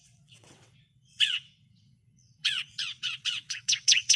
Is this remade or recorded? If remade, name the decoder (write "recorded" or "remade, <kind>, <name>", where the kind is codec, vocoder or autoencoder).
remade, vocoder, WaveNeXt